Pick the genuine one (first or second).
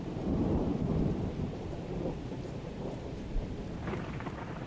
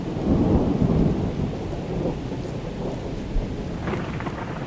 second